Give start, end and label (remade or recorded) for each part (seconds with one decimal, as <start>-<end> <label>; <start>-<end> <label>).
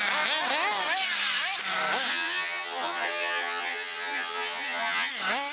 0.0-2.1 recorded; 2.1-5.1 remade; 5.1-5.5 recorded